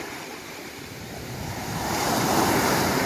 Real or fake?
fake